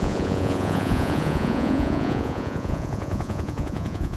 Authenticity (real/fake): fake